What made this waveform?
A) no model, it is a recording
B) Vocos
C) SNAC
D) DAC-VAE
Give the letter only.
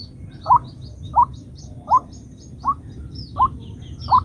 A